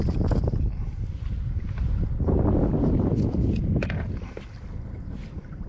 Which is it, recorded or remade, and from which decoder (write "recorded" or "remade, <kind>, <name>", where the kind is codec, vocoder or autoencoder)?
recorded